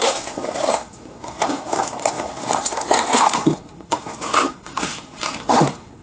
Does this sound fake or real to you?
fake